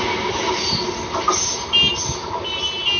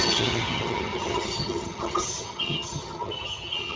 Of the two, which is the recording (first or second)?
first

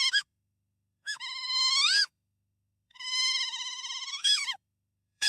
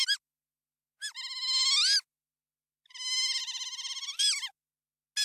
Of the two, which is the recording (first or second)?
second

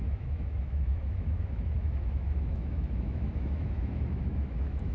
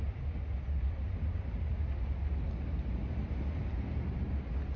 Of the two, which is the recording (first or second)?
second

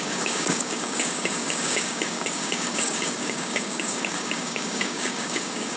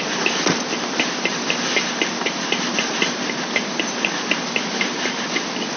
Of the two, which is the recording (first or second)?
second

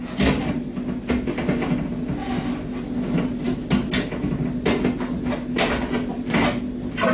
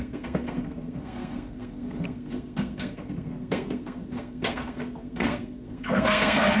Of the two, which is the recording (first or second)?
first